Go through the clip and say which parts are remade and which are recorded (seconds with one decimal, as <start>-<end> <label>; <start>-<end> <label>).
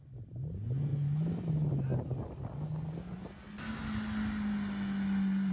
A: 0.0-5.5 recorded